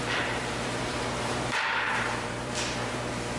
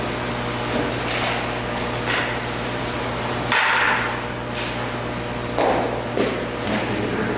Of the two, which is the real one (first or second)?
second